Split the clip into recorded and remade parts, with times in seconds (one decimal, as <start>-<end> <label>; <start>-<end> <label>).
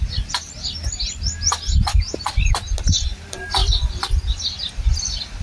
0.0-5.4 recorded